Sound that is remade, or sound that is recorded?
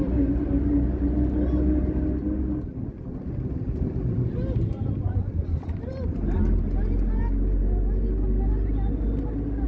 recorded